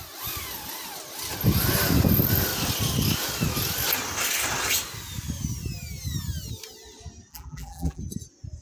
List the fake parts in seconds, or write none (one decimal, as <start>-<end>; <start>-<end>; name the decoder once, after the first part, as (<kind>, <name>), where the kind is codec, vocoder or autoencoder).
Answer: 7.3-8.0 (vocoder, BigVGAN v2)